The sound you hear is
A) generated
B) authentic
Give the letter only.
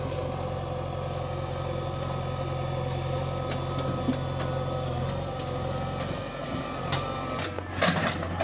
B